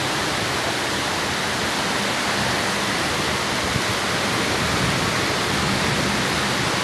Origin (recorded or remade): recorded